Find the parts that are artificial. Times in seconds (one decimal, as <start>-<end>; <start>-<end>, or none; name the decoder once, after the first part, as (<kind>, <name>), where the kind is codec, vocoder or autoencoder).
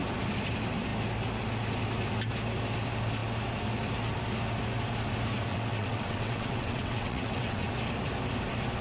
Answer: 5.5-7.7 (vocoder, WaveNeXt)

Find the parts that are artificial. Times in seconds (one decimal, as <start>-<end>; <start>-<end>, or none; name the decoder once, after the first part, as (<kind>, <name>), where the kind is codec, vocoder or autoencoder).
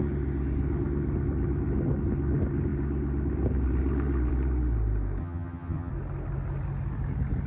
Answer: 5.2-5.9 (vocoder, HiFi-GAN)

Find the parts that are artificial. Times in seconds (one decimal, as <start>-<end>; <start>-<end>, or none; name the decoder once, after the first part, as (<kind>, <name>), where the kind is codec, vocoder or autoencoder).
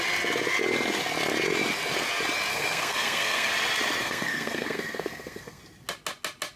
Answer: 2.5-3.5 (codec, SNAC); 4.0-5.6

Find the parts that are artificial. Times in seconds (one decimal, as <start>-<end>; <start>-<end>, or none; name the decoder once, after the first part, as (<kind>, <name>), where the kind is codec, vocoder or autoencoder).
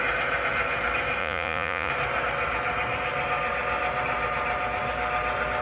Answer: 1.2-1.9 (vocoder, Vocos)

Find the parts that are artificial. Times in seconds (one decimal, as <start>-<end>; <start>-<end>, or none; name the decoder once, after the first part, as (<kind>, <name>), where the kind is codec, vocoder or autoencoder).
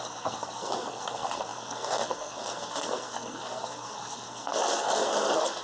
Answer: 0.0-5.6 (codec, SNAC)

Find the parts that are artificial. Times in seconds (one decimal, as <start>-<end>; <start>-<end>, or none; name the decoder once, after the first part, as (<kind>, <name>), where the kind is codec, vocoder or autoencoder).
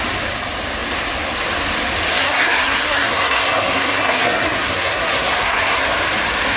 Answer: 2.1-5.8 (codec, SNAC)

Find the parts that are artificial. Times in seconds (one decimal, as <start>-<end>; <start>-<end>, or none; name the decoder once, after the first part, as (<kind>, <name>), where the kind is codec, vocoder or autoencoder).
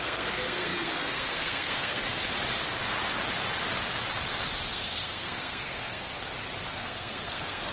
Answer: 0.0-2.0 (codec, SNAC); 4.7-6.1; 6.7-7.7